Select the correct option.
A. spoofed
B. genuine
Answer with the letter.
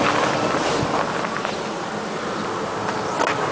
B